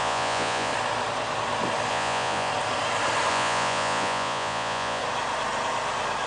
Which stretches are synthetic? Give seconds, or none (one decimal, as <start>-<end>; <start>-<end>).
0.0-0.7; 1.9-2.5; 3.3-5.0